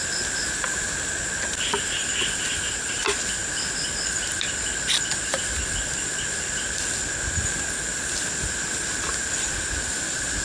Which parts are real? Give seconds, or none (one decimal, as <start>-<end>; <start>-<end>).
0.0-10.4